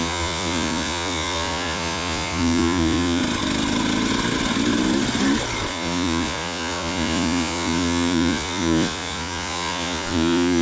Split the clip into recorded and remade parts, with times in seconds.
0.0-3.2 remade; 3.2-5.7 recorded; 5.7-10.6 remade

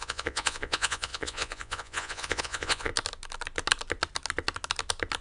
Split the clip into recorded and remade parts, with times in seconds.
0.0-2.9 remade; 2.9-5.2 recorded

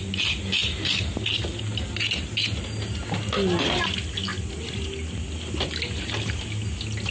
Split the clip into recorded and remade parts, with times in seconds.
0.0-7.1 recorded